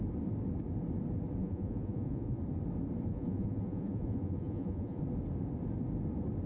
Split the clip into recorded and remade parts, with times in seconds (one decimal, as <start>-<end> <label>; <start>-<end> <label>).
0.0-1.4 recorded; 1.4-2.4 remade; 2.4-3.1 recorded; 3.1-5.0 remade; 5.0-6.5 recorded